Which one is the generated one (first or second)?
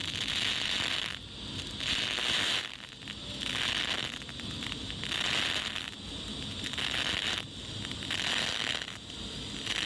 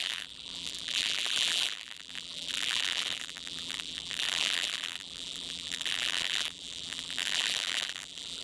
second